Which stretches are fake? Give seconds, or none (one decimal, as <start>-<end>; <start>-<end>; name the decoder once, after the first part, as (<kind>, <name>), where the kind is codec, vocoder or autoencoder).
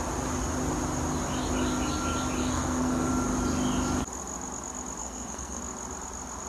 2.4-3.1 (codec, SNAC); 5.0-5.6